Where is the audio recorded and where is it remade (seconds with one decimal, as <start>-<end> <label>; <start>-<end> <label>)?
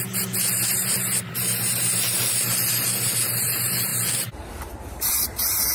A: 0.0-3.9 remade; 3.9-4.5 recorded; 4.5-5.7 remade